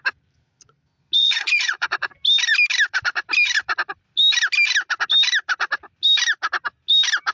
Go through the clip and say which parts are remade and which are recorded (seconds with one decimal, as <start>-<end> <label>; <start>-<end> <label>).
0.0-1.2 recorded; 1.2-2.1 remade; 2.1-7.3 recorded